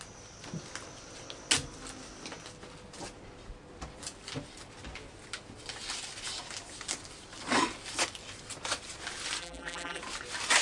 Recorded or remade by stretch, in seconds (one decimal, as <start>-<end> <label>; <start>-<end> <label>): 0.0-9.4 recorded; 9.4-10.0 remade; 10.0-10.6 recorded